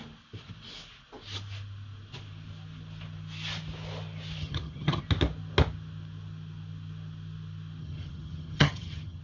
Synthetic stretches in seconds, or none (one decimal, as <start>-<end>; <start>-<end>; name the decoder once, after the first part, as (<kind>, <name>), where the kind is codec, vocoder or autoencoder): 4.4-5.0 (vocoder, HiFi-GAN); 7.8-9.2